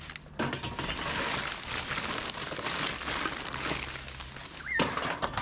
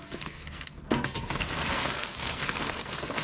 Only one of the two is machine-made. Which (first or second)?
second